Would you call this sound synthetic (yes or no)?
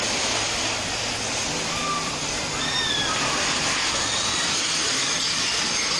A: no